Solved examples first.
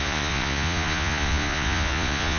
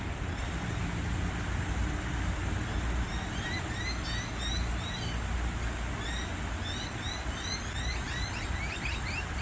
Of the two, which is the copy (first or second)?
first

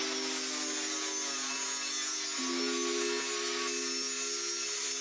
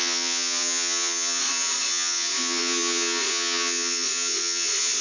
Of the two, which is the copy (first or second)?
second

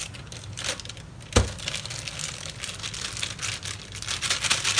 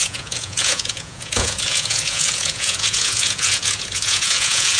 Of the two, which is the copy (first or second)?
second